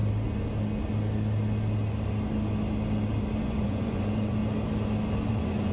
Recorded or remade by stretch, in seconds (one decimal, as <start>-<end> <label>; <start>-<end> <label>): 0.0-3.4 recorded; 3.4-4.4 remade; 4.4-5.3 recorded; 5.3-5.7 remade